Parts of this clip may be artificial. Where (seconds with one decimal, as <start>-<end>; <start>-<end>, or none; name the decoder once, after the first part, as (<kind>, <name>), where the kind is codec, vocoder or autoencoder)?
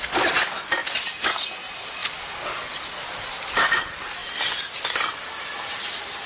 none